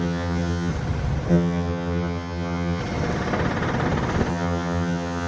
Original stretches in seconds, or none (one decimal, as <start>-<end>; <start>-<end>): 0.7-1.3; 2.8-4.3